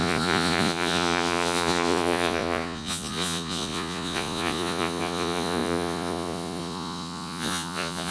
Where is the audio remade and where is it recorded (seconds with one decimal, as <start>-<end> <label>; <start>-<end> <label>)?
0.0-8.1 remade